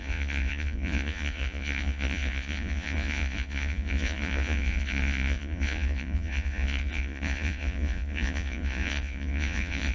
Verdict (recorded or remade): remade